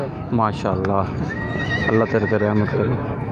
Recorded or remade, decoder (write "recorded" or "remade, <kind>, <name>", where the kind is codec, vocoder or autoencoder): remade, autoencoder, DAC-VAE